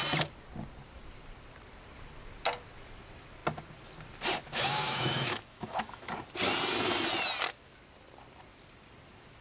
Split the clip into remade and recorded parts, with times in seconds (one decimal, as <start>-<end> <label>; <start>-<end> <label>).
0.0-4.4 recorded; 4.4-6.1 remade; 6.1-9.4 recorded